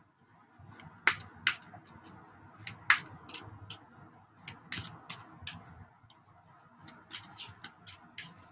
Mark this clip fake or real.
real